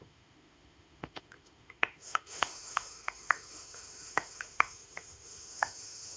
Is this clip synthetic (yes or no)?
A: yes